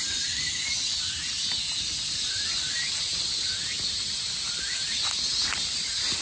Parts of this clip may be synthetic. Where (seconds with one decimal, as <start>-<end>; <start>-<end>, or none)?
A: none